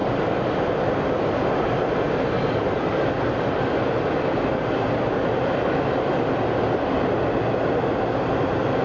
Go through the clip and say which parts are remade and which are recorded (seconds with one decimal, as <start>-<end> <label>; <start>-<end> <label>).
0.0-8.8 recorded